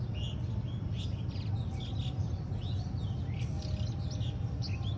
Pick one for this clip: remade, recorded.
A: recorded